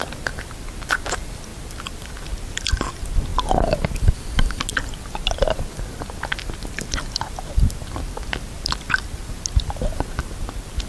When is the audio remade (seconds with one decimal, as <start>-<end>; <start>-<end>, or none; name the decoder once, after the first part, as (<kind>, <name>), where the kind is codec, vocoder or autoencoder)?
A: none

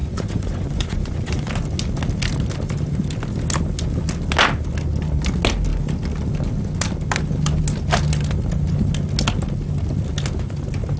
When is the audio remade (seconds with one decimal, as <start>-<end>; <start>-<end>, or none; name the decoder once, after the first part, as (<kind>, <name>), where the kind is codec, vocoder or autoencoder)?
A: 0.0-1.5 (vocoder, Vocos)

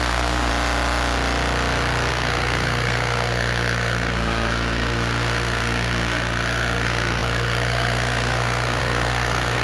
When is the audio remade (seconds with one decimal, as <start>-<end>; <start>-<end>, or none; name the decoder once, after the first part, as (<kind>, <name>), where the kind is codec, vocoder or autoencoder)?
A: 0.0-0.5 (codec, SNAC); 2.1-9.6

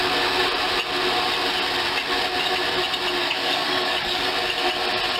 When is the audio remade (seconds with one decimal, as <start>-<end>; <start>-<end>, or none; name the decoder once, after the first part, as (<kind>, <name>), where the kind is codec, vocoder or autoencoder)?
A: 3.2-4.3 (codec, DAC)

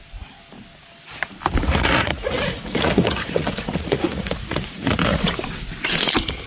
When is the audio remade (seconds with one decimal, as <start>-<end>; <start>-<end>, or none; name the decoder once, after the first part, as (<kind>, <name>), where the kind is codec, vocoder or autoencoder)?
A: 1.6-5.5 (vocoder, Vocos)

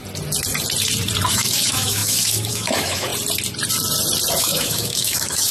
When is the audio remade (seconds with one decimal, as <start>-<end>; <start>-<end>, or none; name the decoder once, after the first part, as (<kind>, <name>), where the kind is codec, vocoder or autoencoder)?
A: 1.3-3.1 (autoencoder, DAC-VAE); 4.4-5.5